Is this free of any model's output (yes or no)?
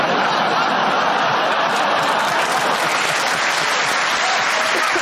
yes